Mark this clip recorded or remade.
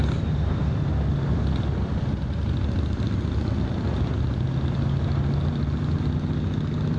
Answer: recorded